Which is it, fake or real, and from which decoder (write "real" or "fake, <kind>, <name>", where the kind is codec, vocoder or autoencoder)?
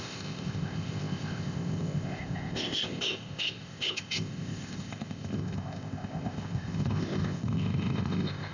fake, codec, ZipCodec